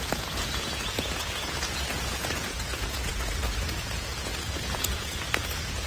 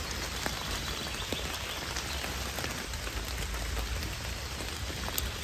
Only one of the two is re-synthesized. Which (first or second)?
first